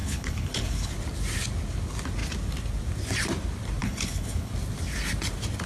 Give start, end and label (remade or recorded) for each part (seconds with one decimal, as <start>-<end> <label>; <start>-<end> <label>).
0.0-0.9 remade; 0.9-3.8 recorded; 3.8-4.5 remade; 4.5-5.7 recorded